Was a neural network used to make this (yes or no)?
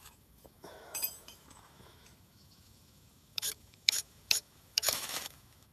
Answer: yes